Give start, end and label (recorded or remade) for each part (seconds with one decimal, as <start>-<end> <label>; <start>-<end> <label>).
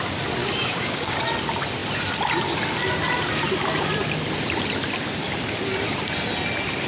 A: 0.0-0.4 recorded; 0.4-1.2 remade; 1.2-6.9 recorded